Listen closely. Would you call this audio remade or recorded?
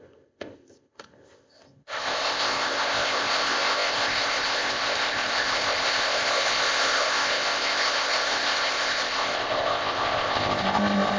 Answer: remade